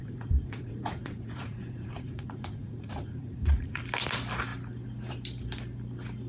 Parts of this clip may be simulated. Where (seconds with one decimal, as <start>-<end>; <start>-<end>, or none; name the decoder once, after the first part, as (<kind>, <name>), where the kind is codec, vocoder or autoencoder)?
0.0-3.8 (vocoder, Vocos)